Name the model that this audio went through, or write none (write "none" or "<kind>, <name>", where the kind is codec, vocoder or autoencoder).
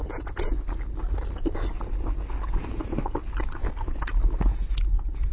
none